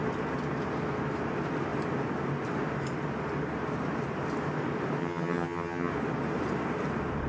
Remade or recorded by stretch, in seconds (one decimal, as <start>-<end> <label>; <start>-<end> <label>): 0.0-5.0 recorded; 5.0-5.9 remade; 5.9-7.3 recorded